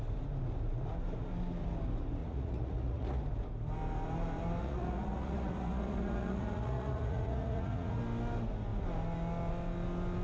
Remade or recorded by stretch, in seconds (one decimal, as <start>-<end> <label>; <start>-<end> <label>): 0.0-2.2 recorded; 2.2-3.2 remade; 3.2-4.6 recorded; 4.6-8.0 remade; 8.0-10.2 recorded